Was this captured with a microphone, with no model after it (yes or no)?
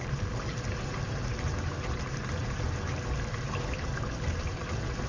no